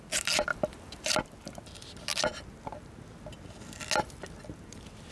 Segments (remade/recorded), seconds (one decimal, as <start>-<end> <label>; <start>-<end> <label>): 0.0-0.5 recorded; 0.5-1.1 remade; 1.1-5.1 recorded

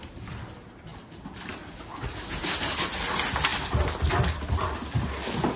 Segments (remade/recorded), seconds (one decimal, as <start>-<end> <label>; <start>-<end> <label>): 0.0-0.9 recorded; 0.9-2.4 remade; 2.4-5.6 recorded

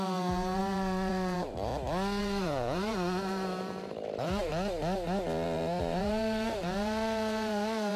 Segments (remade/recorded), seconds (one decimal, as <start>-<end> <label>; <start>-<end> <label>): 0.0-1.7 remade; 1.7-2.2 recorded; 2.2-4.5 remade; 4.5-5.8 recorded; 5.8-8.0 remade

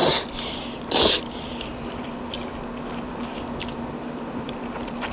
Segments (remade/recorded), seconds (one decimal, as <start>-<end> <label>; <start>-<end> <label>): 0.0-5.1 recorded

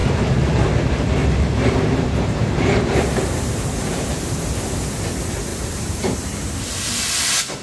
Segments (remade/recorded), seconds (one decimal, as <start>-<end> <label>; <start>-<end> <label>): 0.0-0.5 remade; 0.5-1.2 recorded; 1.2-4.9 remade; 4.9-5.5 recorded; 5.5-6.5 remade; 6.5-7.6 recorded

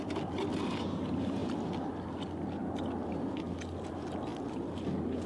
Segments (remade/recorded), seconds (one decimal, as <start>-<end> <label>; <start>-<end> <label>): 0.0-4.3 recorded; 4.3-4.8 remade; 4.8-5.3 recorded